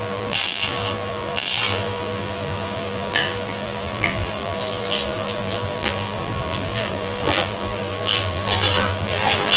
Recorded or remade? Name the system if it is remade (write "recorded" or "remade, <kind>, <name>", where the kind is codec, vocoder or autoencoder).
remade, vocoder, BigVGAN v2